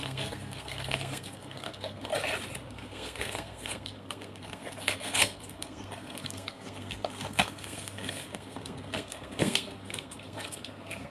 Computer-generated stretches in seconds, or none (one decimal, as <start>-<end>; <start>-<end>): 0.0-2.1; 2.7-11.1